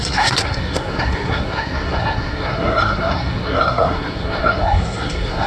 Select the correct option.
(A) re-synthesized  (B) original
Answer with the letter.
A